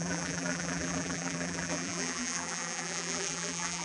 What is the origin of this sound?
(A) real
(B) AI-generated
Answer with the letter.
B